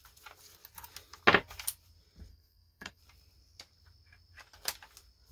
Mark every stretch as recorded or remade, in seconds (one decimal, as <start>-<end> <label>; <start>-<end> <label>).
0.0-2.3 recorded; 2.3-3.0 remade; 3.0-5.3 recorded